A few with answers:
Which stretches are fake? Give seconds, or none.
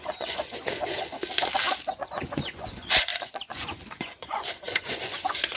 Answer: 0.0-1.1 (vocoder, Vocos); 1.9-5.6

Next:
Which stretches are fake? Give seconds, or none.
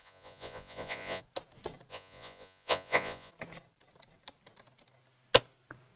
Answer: 0.0-1.2 (vocoder, Vocos); 1.9-3.3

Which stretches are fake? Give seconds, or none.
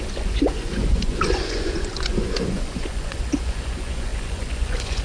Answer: 0.0-5.0 (vocoder, Vocos)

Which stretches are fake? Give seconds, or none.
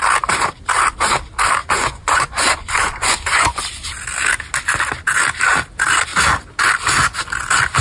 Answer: 1.6-3.6 (vocoder, Vocos)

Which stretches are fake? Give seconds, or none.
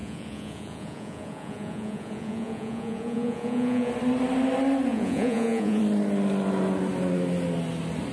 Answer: 0.0-3.9 (vocoder, Vocos); 4.9-5.8